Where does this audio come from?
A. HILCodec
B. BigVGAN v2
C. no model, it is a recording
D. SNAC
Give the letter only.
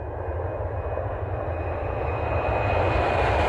C